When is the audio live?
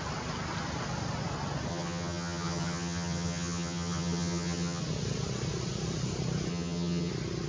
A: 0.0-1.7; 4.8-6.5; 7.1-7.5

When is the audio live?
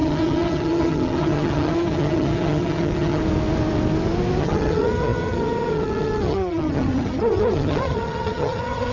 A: 3.2-4.4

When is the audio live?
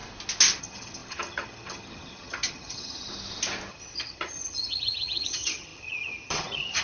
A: 0.0-0.6; 3.1-3.7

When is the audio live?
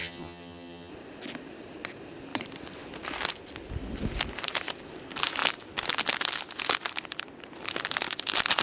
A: 0.9-8.6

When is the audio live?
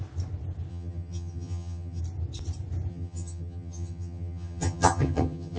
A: 0.0-0.7; 2.0-2.9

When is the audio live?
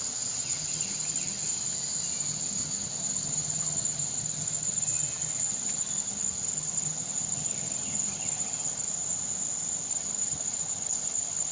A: 1.5-2.2; 8.9-9.9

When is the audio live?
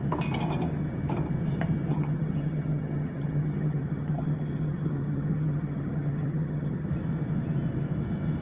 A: 0.0-1.9; 6.9-8.4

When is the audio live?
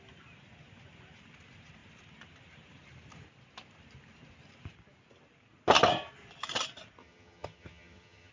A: 0.0-7.0